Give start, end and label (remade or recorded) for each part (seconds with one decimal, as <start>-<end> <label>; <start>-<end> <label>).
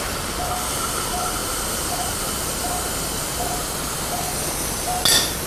0.0-5.5 recorded